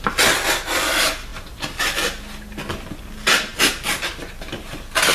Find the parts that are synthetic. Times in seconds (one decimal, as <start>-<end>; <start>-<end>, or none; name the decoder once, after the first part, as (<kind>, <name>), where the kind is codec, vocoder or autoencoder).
3.5-4.3 (vocoder, BigVGAN v2)